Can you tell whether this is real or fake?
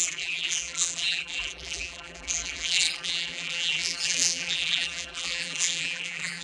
fake